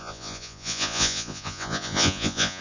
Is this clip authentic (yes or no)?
no